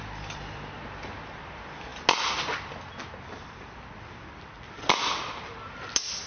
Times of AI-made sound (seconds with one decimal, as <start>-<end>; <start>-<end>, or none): 0.0-1.9; 5.3-6.3